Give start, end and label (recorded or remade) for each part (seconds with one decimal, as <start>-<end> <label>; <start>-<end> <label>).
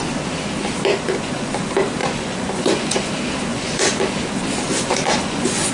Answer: 0.0-0.9 recorded; 0.9-1.5 remade; 1.5-2.0 recorded; 2.0-3.1 remade; 3.1-3.5 recorded; 3.5-4.0 remade; 4.0-4.7 recorded; 4.7-5.7 remade